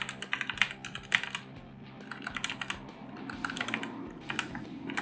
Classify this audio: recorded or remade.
recorded